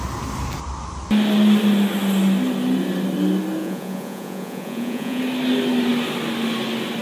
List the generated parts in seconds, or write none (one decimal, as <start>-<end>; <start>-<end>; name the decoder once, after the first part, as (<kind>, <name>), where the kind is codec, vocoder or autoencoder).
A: 3.6-5.2 (vocoder, Vocos)